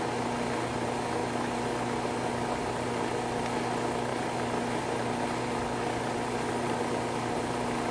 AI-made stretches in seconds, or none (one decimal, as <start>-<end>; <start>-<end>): none